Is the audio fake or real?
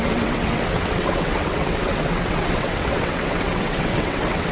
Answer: fake